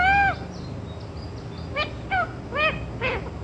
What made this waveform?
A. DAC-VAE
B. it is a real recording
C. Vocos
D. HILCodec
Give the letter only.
B